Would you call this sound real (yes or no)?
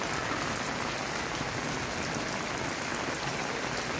yes